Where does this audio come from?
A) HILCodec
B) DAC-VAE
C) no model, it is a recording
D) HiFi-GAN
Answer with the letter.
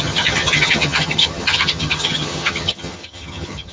D